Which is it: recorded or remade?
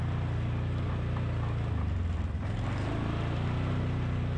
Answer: recorded